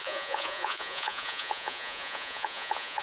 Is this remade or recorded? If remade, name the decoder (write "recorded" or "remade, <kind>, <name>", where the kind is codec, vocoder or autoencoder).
remade, vocoder, Vocos